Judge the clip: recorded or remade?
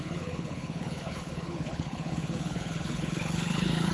remade